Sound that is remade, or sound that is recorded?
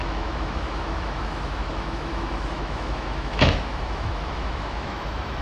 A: remade